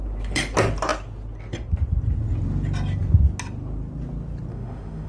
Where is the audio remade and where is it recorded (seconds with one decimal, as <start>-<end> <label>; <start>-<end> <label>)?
0.0-4.5 recorded; 4.5-5.1 remade